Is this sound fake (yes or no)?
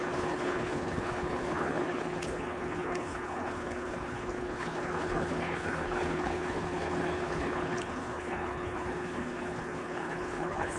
yes